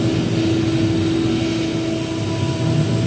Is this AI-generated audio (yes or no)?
no